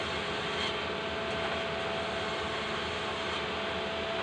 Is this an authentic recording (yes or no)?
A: yes